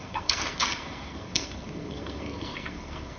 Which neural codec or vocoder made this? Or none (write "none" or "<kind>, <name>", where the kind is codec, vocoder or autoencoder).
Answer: codec, SNAC